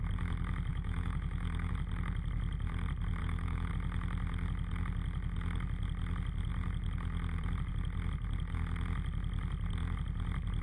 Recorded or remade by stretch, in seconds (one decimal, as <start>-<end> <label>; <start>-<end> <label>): 0.0-0.7 recorded; 0.7-1.7 remade; 1.7-3.2 recorded; 3.2-3.7 remade; 3.7-10.6 recorded